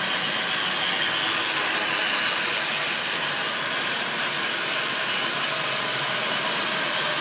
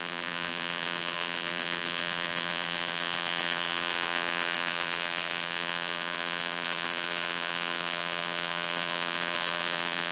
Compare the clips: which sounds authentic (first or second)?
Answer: first